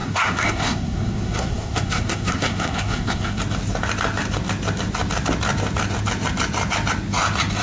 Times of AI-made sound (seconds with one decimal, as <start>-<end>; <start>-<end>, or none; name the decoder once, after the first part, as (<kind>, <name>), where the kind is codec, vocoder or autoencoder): 0.0-3.4 (codec, SNAC)